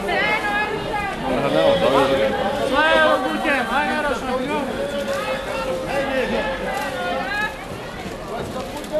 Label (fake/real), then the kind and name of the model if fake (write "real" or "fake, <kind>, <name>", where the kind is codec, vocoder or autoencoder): real